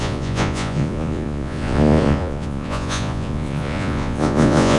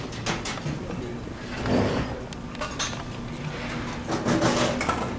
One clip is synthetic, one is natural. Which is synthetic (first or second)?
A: first